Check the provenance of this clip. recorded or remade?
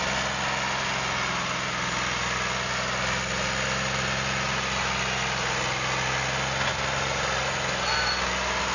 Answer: recorded